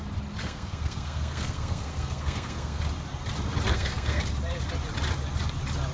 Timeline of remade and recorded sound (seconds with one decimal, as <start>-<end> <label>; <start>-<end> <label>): 0.0-0.4 recorded; 0.4-2.8 remade; 2.8-3.7 recorded; 3.7-4.2 remade; 4.2-5.9 recorded